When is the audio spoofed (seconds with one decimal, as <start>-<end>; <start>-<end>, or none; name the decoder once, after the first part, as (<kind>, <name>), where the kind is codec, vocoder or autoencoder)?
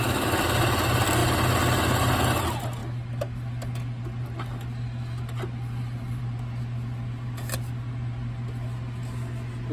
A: none